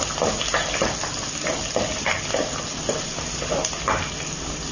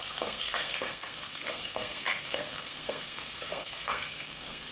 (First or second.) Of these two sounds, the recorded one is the first